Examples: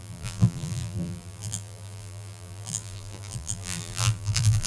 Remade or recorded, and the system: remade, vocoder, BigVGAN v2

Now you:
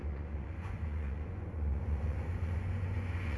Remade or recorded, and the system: remade, vocoder, Vocos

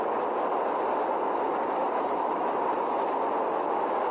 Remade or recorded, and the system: recorded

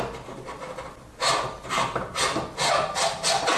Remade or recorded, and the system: recorded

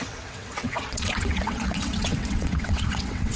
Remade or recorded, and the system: remade, vocoder, WaveNeXt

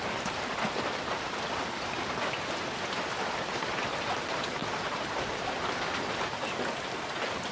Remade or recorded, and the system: recorded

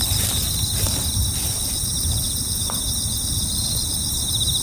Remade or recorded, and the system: recorded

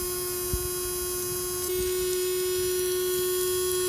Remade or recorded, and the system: recorded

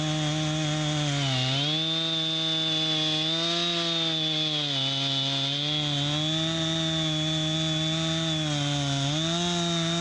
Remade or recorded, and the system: recorded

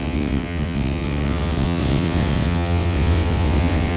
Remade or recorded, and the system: remade, vocoder, WaveNeXt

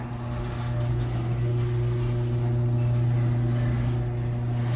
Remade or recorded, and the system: recorded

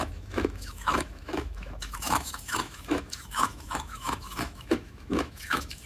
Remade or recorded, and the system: remade, autoencoder, DAC-VAE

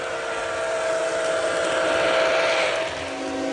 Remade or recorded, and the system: recorded